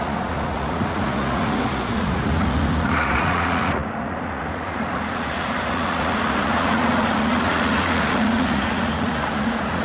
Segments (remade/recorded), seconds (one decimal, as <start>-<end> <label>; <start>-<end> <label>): 0.0-9.8 remade